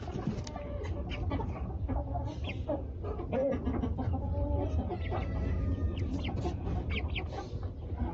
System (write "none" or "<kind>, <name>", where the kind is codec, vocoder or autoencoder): none